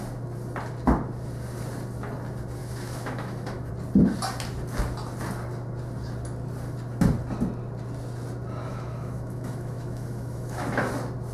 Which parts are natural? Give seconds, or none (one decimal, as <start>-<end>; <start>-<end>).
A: 0.0-2.6; 3.7-8.7; 10.9-11.3